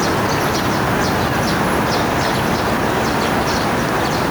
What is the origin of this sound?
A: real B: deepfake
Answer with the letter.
A